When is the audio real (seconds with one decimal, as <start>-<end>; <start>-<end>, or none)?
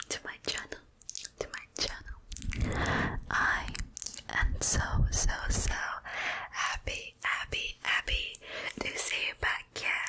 0.0-1.7; 2.4-6.1; 8.0-10.1